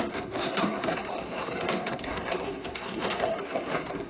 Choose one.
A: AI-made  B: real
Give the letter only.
A